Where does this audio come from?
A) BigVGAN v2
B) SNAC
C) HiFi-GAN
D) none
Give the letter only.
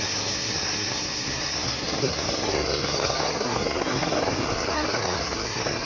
B